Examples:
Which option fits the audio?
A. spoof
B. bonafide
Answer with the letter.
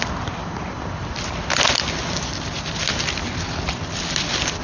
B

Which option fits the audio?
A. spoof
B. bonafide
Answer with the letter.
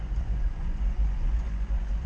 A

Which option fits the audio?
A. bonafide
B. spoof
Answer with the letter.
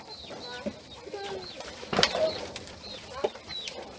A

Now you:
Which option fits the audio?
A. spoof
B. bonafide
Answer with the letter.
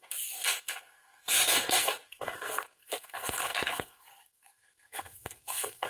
A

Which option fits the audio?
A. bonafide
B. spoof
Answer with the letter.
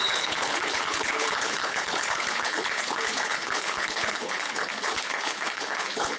B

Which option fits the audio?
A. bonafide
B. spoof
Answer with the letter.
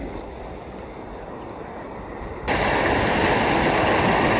A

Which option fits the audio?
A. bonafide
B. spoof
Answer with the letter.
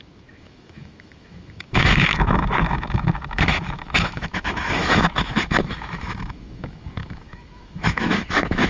B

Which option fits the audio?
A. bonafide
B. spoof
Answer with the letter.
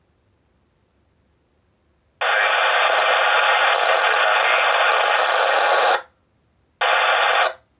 A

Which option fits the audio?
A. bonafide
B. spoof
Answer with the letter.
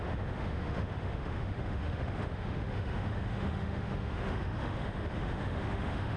B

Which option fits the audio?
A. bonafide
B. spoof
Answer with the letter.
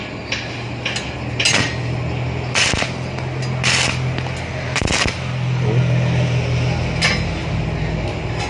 A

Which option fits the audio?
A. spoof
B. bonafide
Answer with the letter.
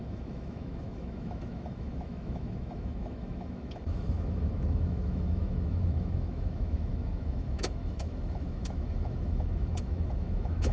A